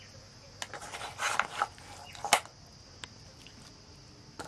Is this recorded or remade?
recorded